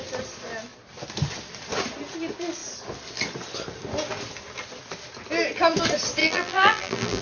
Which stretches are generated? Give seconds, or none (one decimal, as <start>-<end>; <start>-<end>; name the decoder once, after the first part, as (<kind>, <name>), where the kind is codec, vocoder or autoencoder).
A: 6.2-7.2 (vocoder, BigVGAN v2)